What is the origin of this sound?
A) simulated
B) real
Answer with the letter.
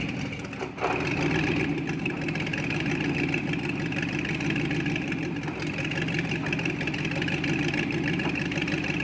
B